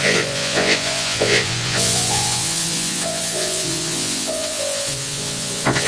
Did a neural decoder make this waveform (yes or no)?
yes